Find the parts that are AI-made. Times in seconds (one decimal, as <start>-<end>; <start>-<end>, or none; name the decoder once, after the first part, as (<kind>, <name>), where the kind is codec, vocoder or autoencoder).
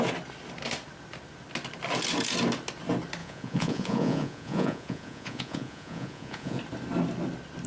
3.2-6.6 (vocoder, Vocos)